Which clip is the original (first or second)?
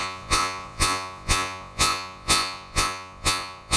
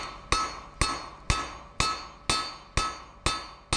second